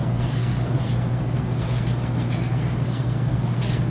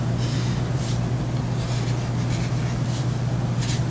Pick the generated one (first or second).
first